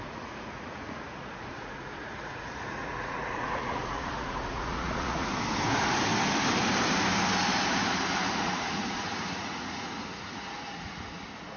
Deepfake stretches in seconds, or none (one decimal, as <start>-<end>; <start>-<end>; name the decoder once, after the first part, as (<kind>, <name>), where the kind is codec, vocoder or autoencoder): 0.0-5.3 (vocoder, Vocos); 8.4-11.6